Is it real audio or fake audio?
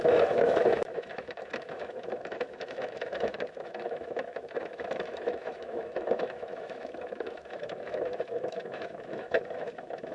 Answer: fake